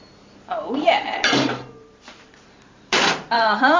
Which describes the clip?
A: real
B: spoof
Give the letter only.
B